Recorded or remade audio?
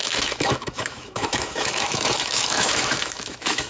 remade